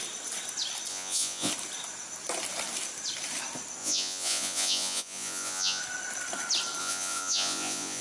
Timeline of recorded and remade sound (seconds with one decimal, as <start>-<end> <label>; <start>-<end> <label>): 0.0-0.9 recorded; 0.9-1.5 remade; 1.5-3.8 recorded; 3.8-5.8 remade; 5.8-6.8 recorded; 6.8-8.0 remade